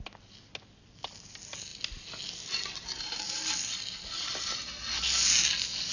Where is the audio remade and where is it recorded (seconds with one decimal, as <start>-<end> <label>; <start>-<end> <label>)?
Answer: 0.0-5.9 recorded